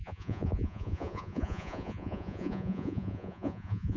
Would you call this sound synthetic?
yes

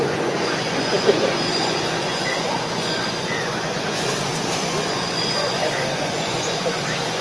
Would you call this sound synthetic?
yes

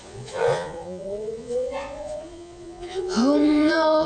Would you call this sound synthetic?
yes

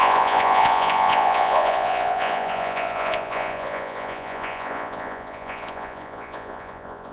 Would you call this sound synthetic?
yes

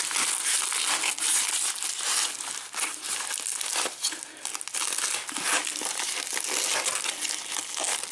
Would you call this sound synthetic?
no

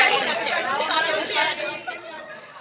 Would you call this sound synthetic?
yes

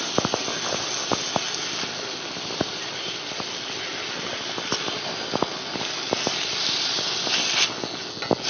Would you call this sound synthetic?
no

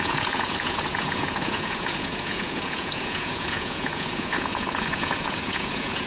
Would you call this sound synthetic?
yes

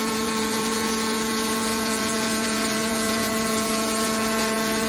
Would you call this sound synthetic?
yes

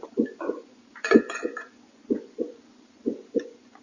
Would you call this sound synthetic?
yes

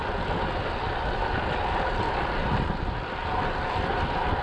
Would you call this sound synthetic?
no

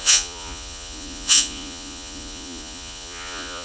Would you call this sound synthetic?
yes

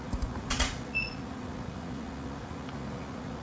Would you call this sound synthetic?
yes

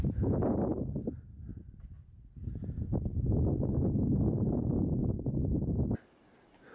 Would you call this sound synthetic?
no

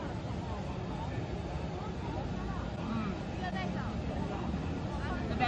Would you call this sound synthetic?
no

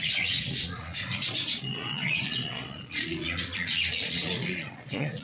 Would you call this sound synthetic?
yes